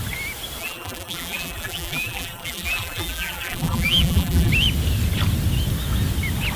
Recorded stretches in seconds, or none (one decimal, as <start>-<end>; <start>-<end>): 0.0-0.6; 4.5-6.6